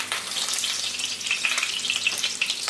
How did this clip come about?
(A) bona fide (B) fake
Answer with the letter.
A